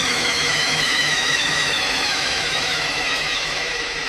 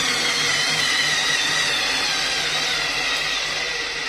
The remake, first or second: first